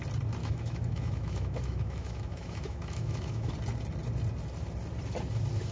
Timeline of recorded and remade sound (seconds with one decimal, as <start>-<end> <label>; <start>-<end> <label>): 0.0-0.4 recorded; 0.4-3.5 remade; 3.5-5.7 recorded